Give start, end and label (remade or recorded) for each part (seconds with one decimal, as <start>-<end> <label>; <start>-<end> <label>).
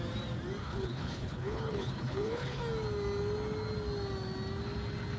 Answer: 0.0-0.6 recorded; 0.6-2.6 remade; 2.6-5.2 recorded